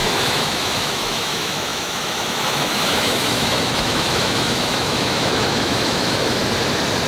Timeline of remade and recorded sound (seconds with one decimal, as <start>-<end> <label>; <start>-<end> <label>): 0.0-6.4 remade; 6.4-7.1 recorded